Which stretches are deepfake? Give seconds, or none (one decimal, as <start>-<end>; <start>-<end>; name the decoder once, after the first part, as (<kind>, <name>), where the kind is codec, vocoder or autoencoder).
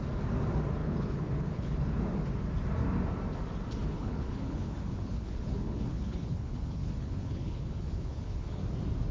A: 0.8-2.0 (codec, HILCodec); 3.8-8.6